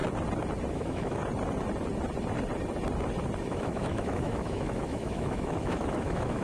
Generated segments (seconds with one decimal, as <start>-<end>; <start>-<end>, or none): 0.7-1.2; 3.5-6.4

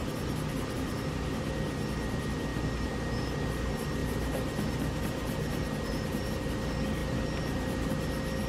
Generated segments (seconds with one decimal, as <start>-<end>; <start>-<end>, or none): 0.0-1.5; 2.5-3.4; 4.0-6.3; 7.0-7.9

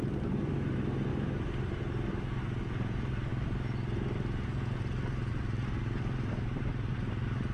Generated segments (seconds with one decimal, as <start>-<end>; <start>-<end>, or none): none

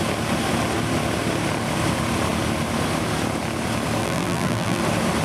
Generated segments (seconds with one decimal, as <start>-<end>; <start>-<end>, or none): 4.0-4.8